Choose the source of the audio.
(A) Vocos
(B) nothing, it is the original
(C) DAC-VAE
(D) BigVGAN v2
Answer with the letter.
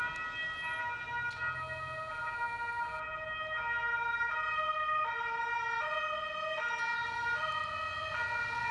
B